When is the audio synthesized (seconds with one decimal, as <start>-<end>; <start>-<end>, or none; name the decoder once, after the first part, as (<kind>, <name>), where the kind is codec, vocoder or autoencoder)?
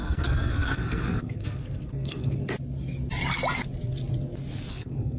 0.0-2.4 (codec, SNAC); 4.7-5.2